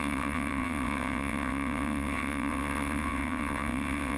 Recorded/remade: remade